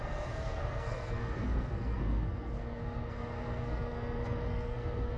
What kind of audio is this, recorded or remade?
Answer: remade